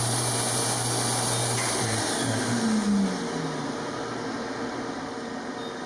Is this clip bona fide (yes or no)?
yes